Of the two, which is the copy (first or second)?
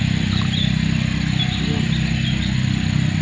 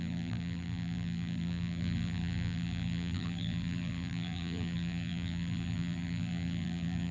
second